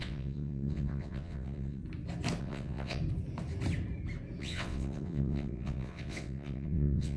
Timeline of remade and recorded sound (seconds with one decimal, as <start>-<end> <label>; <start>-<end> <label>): 0.0-1.8 remade; 1.8-2.4 recorded; 2.4-3.0 remade; 3.0-4.4 recorded; 4.4-7.2 remade

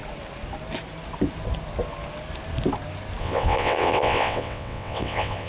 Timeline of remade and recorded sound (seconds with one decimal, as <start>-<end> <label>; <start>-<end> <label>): 0.0-3.2 recorded; 3.2-5.5 remade

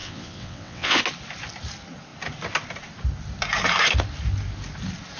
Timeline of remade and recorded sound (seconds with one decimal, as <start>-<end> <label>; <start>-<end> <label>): 0.0-1.0 remade; 1.0-5.2 recorded